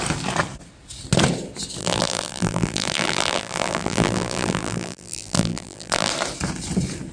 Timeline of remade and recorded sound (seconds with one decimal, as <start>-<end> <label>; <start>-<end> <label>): 0.0-1.8 recorded; 1.8-6.1 remade; 6.1-7.1 recorded